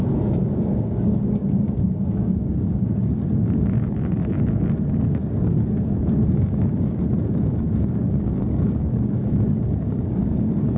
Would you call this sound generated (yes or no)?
yes